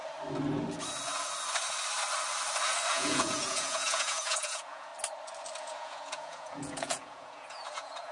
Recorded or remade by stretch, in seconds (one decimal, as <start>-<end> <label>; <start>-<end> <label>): 0.0-2.9 recorded; 2.9-4.9 remade; 4.9-5.6 recorded; 5.6-8.1 remade